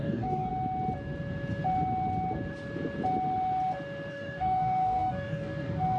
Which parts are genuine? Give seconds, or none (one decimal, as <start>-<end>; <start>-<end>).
0.5-4.1